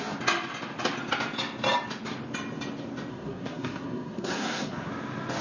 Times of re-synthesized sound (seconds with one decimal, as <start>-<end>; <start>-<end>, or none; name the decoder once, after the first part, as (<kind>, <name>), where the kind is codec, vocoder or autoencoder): 3.1-4.9 (codec, SNAC)